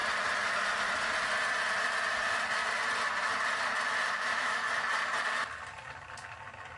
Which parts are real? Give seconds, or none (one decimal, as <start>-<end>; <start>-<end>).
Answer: 0.0-4.1; 4.6-6.8